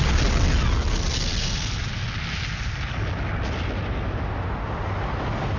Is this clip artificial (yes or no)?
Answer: no